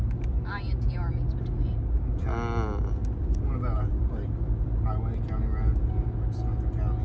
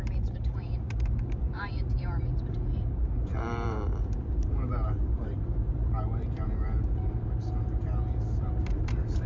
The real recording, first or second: first